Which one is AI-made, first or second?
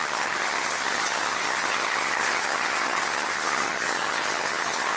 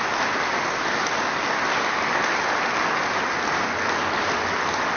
first